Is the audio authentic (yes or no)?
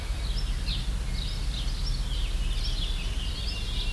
yes